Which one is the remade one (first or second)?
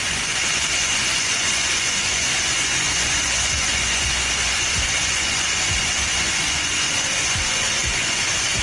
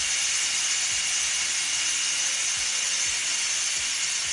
first